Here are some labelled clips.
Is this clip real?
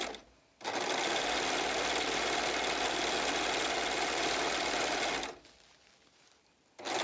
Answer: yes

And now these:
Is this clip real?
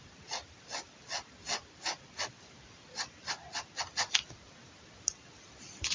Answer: yes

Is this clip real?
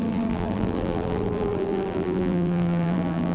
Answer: no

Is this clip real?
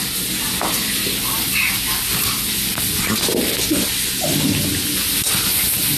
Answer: yes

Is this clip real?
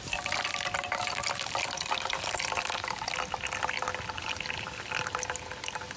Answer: yes